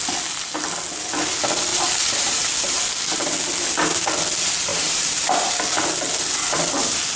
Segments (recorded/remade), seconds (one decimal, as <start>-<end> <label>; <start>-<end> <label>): 0.0-1.7 recorded; 1.7-2.8 remade; 2.8-4.7 recorded; 4.7-5.6 remade; 5.6-7.2 recorded